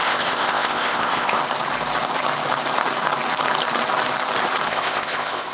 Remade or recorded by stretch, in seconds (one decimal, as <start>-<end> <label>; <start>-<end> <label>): 0.0-1.4 remade; 1.4-4.7 recorded; 4.7-5.5 remade